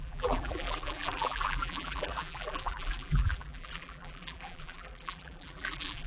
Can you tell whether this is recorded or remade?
remade